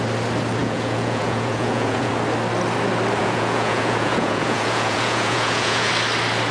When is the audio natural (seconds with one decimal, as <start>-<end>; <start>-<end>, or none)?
0.0-0.6; 2.1-3.2; 5.9-6.5